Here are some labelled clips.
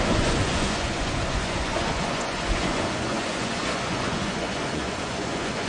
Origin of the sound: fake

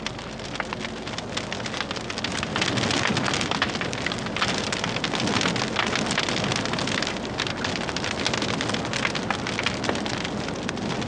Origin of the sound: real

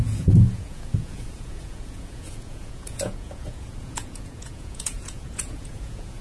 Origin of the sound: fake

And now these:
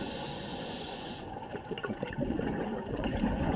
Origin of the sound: fake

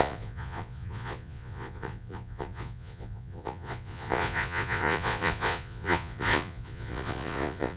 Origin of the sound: fake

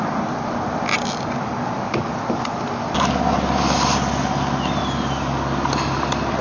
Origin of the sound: real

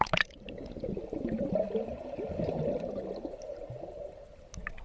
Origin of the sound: real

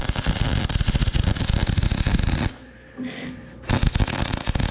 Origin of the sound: real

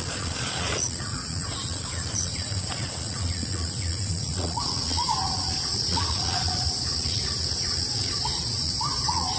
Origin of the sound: fake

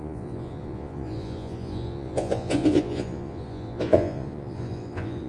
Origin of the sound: fake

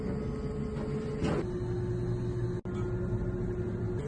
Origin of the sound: real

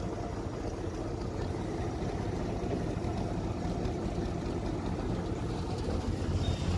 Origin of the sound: real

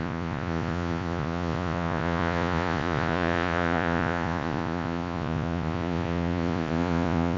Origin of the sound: fake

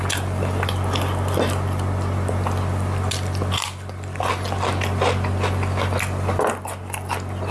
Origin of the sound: real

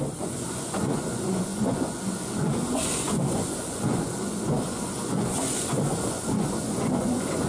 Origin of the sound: fake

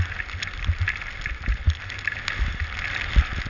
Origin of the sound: real